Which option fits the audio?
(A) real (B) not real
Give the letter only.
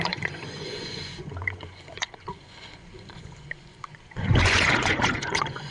B